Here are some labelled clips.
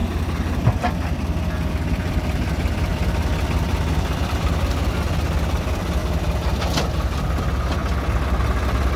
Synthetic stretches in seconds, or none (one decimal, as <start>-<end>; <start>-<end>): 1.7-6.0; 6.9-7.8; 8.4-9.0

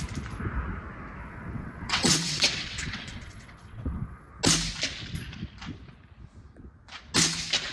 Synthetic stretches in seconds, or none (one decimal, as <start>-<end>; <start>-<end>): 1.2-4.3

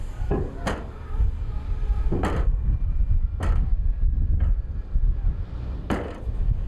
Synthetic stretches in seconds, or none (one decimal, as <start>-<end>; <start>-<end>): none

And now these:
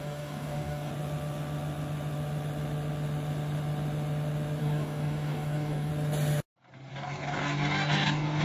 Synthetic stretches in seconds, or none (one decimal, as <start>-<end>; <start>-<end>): 0.0-0.9; 4.6-5.9; 6.9-8.4

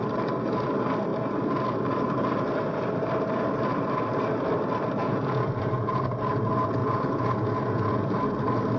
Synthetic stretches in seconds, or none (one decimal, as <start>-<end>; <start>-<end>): 5.0-6.0; 6.8-8.2

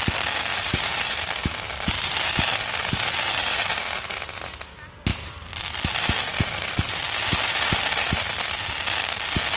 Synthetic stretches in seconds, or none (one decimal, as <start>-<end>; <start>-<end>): 0.5-3.8; 5.1-8.7